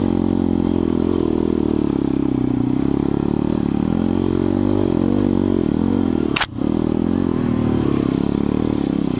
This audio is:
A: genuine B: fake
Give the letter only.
A